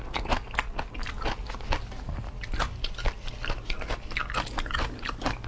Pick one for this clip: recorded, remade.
recorded